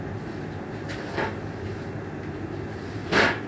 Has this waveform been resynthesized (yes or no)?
no